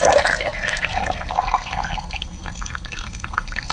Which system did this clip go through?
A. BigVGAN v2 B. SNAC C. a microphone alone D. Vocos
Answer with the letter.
B